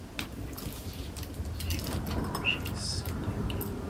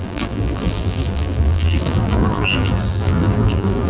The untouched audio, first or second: first